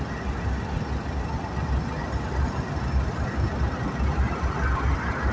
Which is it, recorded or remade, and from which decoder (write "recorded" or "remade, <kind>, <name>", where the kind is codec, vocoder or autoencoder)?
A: recorded